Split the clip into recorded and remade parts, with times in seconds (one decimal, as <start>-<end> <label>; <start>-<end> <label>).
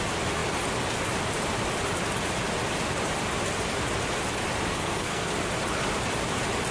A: 0.0-4.7 recorded; 4.7-5.3 remade; 5.3-6.7 recorded